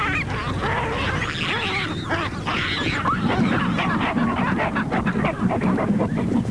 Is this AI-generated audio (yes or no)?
no